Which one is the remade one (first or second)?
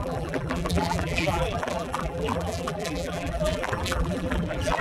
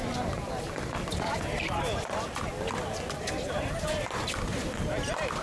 first